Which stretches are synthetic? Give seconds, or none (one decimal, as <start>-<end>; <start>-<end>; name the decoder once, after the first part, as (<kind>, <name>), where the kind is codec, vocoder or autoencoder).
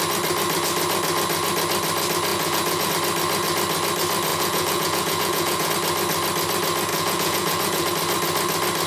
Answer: 2.3-2.9 (vocoder, Vocos); 4.3-5.7; 6.9-7.9